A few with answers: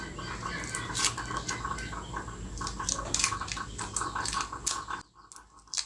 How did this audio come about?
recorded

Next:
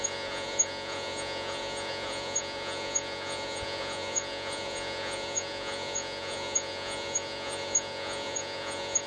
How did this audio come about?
remade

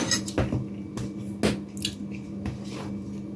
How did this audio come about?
recorded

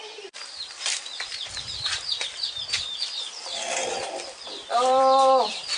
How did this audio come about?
remade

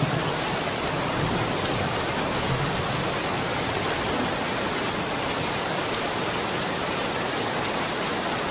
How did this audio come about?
recorded